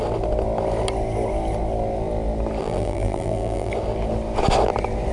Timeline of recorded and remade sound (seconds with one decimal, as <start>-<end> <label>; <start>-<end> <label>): 0.0-2.6 recorded; 2.6-3.7 remade; 3.7-5.1 recorded